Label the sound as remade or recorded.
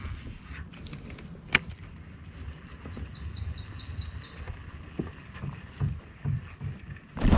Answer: recorded